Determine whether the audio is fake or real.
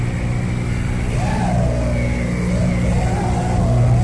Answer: real